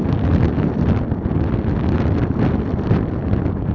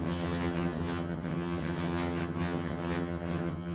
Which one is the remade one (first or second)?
second